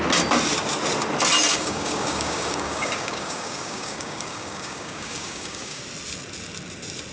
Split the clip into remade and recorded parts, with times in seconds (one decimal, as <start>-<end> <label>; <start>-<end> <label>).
0.0-1.5 recorded; 1.5-5.8 remade; 5.8-7.1 recorded